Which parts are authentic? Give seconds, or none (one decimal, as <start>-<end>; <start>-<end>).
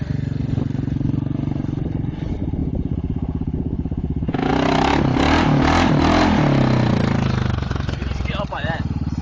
0.0-2.6; 4.5-9.2